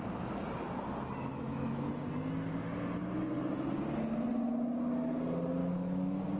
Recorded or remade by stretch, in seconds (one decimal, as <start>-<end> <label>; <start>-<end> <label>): 0.0-1.3 recorded; 1.3-1.9 remade; 1.9-5.6 recorded; 5.6-6.4 remade